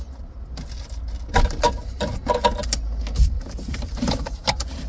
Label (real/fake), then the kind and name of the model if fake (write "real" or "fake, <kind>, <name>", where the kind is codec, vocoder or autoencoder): real